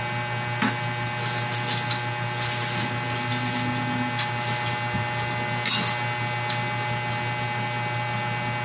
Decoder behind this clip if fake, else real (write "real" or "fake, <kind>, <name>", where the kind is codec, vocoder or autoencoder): real